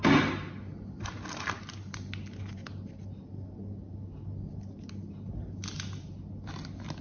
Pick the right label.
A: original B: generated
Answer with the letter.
A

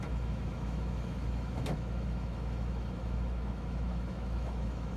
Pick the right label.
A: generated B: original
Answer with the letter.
A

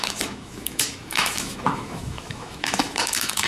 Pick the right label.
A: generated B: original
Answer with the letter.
A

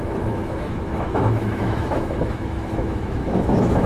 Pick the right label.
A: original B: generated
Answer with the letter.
B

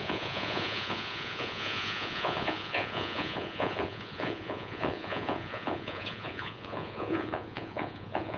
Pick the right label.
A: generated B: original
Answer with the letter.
A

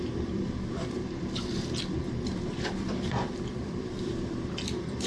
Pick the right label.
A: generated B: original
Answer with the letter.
A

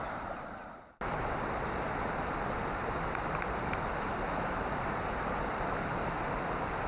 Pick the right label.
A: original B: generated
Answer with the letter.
A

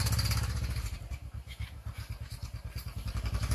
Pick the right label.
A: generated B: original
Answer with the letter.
A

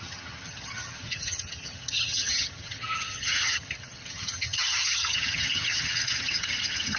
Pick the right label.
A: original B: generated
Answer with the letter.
B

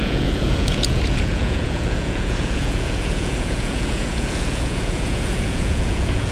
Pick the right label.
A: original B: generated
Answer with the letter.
B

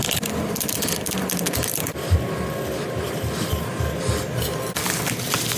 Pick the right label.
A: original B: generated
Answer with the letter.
A